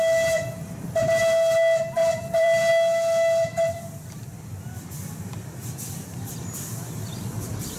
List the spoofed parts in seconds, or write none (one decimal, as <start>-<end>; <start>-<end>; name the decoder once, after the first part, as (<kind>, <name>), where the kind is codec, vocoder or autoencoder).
2.0-2.7 (vocoder, BigVGAN v2); 4.2-7.8